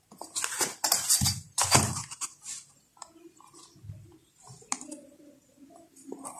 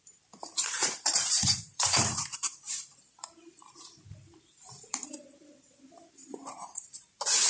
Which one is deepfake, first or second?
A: second